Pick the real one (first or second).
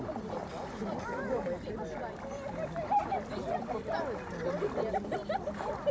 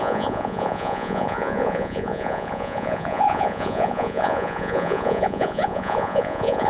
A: first